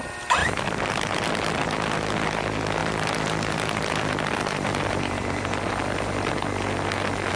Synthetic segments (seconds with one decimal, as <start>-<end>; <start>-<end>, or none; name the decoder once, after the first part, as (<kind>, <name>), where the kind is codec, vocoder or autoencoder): 0.4-0.9 (vocoder, BigVGAN v2); 2.8-6.3

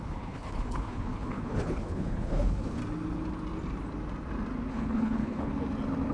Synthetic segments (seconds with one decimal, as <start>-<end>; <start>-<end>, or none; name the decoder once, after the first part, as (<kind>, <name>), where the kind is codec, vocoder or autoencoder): 0.0-2.8 (codec, HILCodec); 4.7-5.5

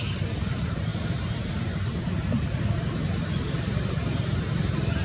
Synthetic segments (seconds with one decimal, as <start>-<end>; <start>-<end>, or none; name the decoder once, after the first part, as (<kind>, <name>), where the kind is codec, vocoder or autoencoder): 0.0-5.0 (vocoder, BigVGAN v2)